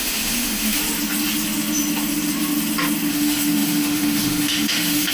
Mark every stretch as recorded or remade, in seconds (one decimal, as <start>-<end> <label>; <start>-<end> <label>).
0.0-0.8 remade; 0.8-3.1 recorded; 3.1-5.1 remade